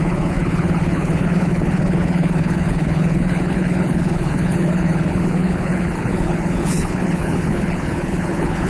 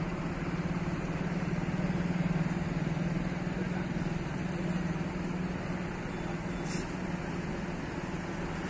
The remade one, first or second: first